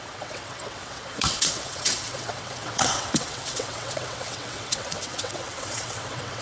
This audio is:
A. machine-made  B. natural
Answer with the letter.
A